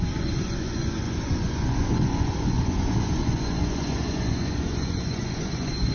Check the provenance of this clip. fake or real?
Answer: fake